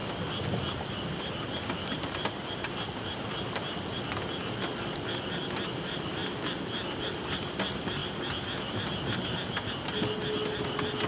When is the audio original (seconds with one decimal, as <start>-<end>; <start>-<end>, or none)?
5.2-11.1